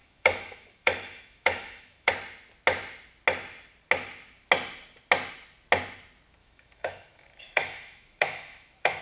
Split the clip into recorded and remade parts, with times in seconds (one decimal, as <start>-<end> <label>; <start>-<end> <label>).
0.0-2.1 remade; 2.1-6.4 recorded; 6.4-9.0 remade